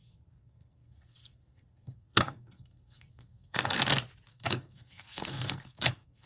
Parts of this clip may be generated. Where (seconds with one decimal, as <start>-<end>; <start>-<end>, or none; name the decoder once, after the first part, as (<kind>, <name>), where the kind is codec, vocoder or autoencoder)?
0.0-3.8 (codec, SNAC); 4.3-6.3